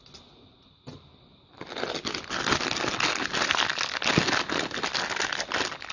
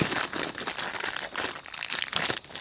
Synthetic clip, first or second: second